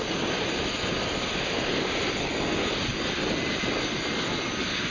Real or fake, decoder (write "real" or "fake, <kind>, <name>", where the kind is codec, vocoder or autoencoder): real